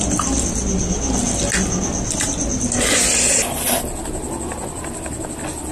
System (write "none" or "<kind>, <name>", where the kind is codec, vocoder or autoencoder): none